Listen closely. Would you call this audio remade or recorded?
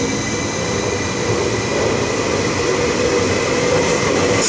recorded